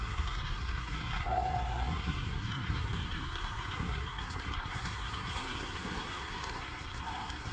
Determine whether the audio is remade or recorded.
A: remade